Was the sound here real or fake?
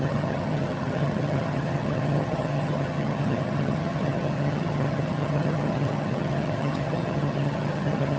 fake